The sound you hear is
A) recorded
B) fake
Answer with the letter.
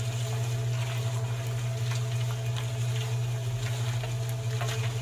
A